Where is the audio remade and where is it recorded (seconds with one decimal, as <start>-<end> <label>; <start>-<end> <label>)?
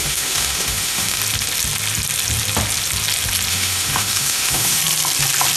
0.0-1.2 remade; 1.2-3.5 recorded; 3.5-4.8 remade; 4.8-5.6 recorded